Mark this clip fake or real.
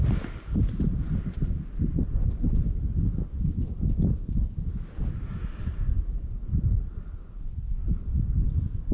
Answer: real